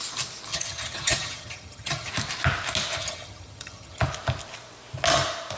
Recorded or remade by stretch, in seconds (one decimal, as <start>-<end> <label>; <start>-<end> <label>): 0.0-0.5 recorded; 0.5-2.1 remade; 2.1-3.0 recorded; 3.0-4.0 remade; 4.0-5.6 recorded